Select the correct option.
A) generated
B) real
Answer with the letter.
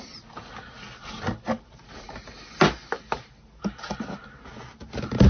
B